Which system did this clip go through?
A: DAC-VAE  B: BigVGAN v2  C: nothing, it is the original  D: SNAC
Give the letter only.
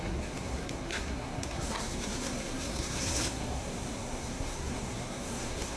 D